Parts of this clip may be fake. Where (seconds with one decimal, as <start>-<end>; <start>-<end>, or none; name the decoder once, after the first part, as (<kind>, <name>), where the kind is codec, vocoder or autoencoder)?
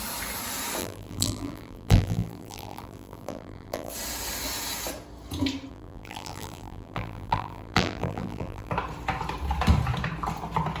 0.8-3.9 (vocoder, BigVGAN v2); 5.7-8.7